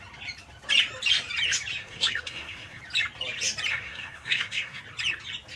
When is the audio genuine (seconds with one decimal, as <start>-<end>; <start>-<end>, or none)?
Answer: 0.0-1.8; 2.8-3.7; 4.8-5.6